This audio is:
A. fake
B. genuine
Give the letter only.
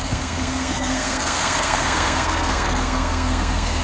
A